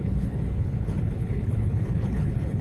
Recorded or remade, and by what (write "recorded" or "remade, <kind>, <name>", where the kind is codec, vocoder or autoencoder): remade, codec, HILCodec